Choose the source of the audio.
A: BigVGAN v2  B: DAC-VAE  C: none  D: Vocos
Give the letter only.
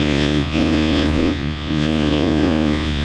D